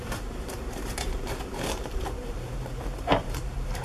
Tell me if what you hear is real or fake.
fake